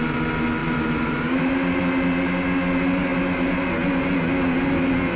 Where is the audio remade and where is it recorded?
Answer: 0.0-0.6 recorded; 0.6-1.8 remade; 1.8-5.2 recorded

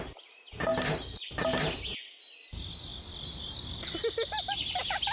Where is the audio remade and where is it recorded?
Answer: 0.0-5.1 recorded